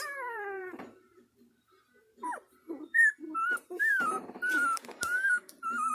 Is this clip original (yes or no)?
no